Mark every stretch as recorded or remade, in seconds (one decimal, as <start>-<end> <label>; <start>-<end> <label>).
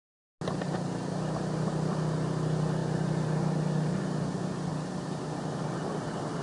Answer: 0.0-4.7 recorded; 4.7-6.0 remade; 6.0-6.4 recorded